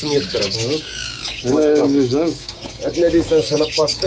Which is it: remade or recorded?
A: remade